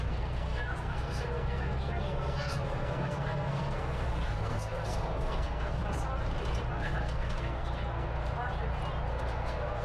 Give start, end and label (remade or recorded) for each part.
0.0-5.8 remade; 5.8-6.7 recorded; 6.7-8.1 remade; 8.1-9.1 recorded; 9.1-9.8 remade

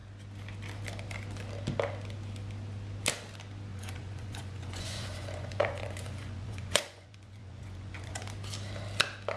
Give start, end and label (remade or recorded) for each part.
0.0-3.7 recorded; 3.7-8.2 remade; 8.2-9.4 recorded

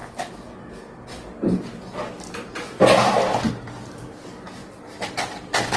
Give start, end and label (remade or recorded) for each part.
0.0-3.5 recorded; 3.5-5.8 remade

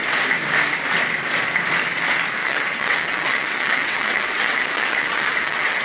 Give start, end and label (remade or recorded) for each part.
0.0-2.4 recorded; 2.4-5.8 remade

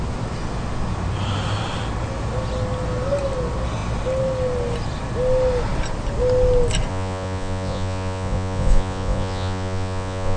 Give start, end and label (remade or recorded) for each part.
0.0-6.9 recorded; 6.9-10.4 remade